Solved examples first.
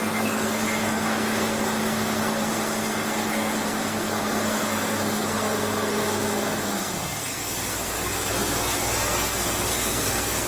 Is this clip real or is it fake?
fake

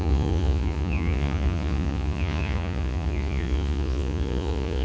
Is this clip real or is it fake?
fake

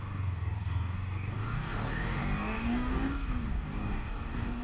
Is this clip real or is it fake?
fake